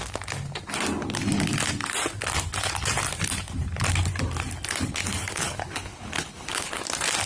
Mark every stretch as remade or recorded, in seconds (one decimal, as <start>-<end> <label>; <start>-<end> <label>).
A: 0.0-5.0 recorded; 5.0-6.8 remade; 6.8-7.3 recorded